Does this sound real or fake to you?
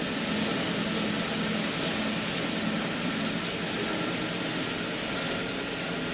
real